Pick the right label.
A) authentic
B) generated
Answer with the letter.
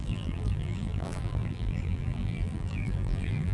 B